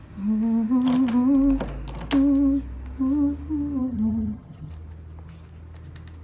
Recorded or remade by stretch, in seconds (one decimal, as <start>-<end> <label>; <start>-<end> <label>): 0.0-3.8 recorded; 3.8-4.7 remade; 4.7-6.2 recorded